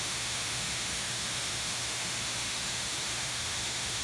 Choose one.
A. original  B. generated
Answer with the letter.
B